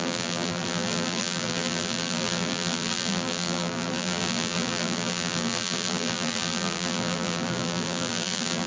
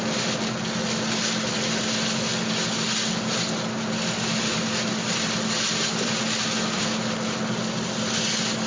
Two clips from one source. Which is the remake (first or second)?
first